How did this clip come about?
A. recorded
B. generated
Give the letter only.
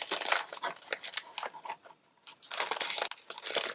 A